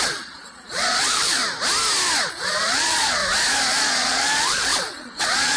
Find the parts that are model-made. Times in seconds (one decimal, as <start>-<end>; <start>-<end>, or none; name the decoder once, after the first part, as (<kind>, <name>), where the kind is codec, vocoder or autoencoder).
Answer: 0.0-1.4 (vocoder, Vocos); 2.3-3.2; 3.7-5.6